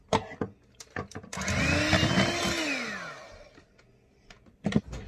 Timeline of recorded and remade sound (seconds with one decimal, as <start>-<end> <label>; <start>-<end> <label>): 0.0-5.1 recorded